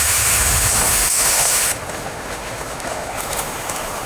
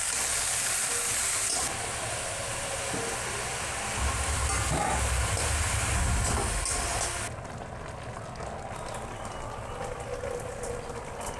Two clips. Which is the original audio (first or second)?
second